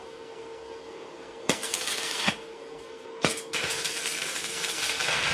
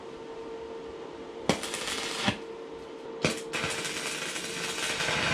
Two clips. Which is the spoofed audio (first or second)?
first